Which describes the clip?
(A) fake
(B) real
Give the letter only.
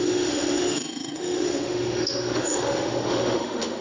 A